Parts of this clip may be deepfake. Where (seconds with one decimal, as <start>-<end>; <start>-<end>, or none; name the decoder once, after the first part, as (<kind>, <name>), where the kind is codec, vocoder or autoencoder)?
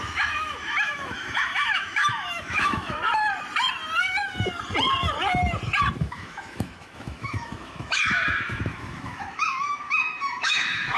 0.0-3.0 (autoencoder, DAC-VAE); 6.0-11.0